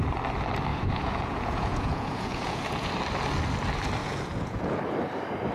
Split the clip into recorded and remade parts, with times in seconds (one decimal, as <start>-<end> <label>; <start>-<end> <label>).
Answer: 0.0-0.7 recorded; 0.7-2.9 remade; 2.9-4.0 recorded; 4.0-4.8 remade; 4.8-5.5 recorded